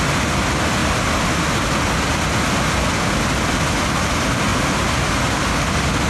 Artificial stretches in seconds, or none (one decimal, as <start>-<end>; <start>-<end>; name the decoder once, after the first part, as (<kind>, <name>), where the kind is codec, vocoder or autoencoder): none